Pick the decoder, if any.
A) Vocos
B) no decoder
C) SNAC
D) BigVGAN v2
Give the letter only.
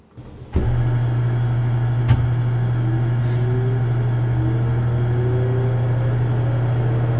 B